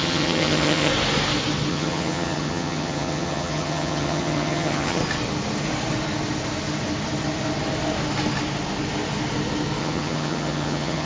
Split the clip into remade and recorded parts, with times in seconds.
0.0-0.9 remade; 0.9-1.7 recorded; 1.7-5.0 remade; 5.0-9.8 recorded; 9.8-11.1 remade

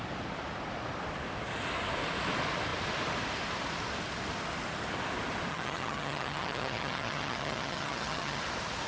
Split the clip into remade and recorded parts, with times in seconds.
0.0-5.5 recorded; 5.5-8.4 remade; 8.4-8.9 recorded

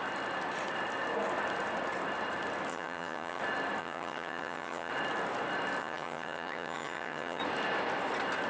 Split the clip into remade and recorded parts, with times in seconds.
0.0-2.7 recorded; 2.7-3.4 remade; 3.4-3.8 recorded; 3.8-4.9 remade; 4.9-5.8 recorded; 5.8-7.4 remade; 7.4-8.5 recorded